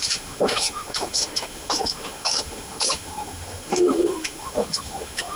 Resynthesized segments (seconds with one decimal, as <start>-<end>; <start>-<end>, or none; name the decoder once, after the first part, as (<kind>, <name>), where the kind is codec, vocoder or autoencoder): 0.0-5.4 (autoencoder, DAC-VAE)